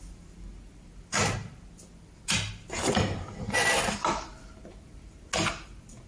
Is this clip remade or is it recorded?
recorded